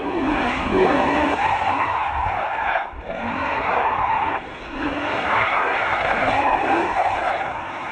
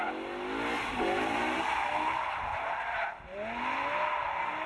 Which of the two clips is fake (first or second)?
first